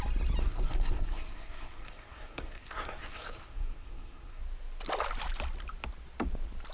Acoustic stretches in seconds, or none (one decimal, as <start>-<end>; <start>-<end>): 0.0-0.4; 4.4-6.7